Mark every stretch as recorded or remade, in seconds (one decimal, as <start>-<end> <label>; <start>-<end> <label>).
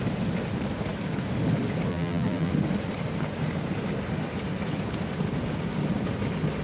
0.0-1.9 recorded; 1.9-2.5 remade; 2.5-6.6 recorded